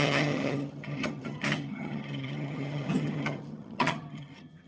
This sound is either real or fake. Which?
fake